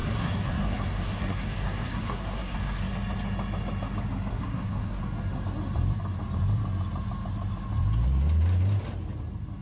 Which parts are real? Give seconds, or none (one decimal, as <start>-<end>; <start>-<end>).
2.9-4.3; 5.0-9.6

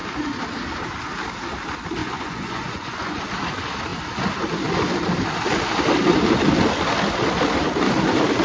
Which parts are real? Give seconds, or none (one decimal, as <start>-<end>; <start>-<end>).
0.0-2.0; 3.2-8.4

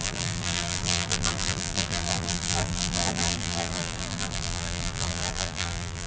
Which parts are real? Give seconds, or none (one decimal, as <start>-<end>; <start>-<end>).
none

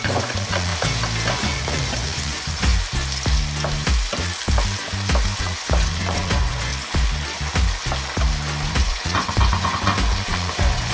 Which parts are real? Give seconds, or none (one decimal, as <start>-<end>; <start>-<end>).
0.7-1.3; 2.7-5.4; 6.7-8.7

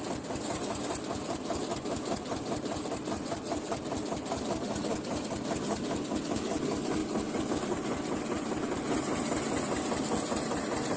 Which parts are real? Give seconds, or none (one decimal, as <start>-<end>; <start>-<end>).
0.0-11.0